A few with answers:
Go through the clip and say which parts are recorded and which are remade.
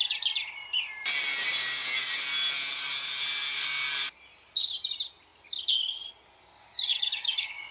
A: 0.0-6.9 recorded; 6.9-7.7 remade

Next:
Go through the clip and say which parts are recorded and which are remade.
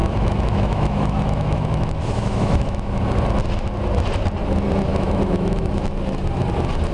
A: 0.0-3.0 remade; 3.0-4.9 recorded; 4.9-5.7 remade; 5.7-6.9 recorded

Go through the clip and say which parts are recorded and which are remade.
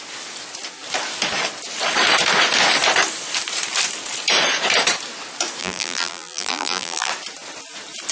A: 0.0-5.6 recorded; 5.6-7.1 remade; 7.1-8.1 recorded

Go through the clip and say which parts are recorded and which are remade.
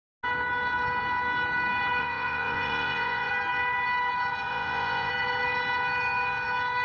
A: 0.0-2.0 recorded; 2.0-3.3 remade; 3.3-4.5 recorded; 4.5-5.1 remade; 5.1-6.8 recorded